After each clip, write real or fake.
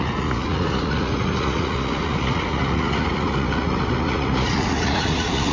fake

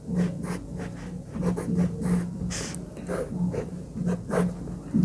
real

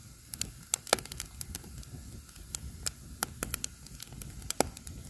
real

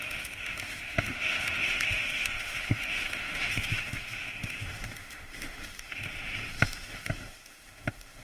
fake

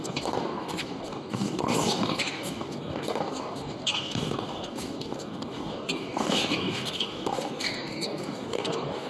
fake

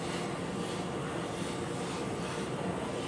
real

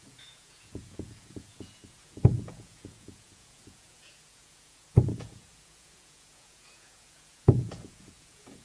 fake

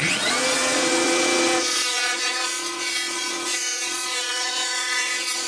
fake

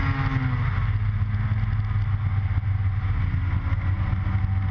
real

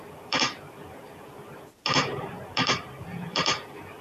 fake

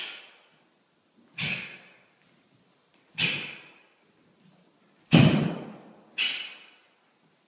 real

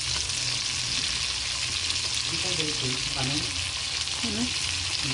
real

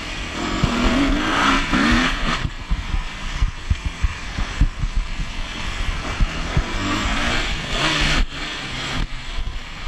fake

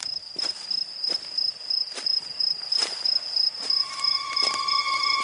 real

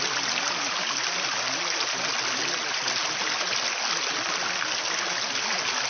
real